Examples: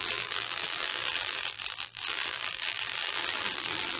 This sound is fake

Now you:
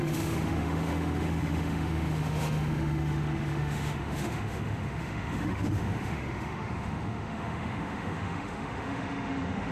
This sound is fake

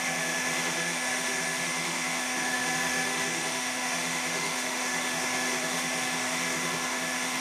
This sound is fake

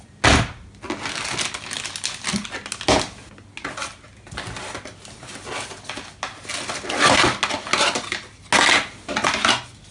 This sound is real